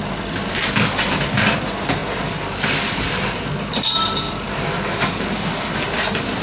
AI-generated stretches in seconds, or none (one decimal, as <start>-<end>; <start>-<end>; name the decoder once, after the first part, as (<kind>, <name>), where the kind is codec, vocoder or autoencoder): 0.0-2.0 (vocoder, BigVGAN v2); 5.0-6.4